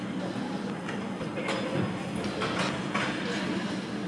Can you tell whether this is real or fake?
real